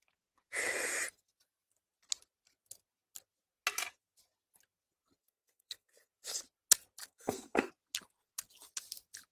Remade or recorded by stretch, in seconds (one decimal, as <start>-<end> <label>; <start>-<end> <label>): 0.0-5.2 recorded; 5.2-6.1 remade; 6.1-7.0 recorded; 7.0-7.7 remade; 7.7-9.3 recorded